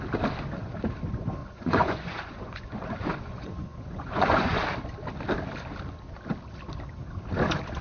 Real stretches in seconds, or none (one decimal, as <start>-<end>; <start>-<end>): 0.0-1.4; 4.6-7.8